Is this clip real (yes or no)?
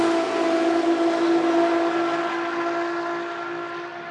yes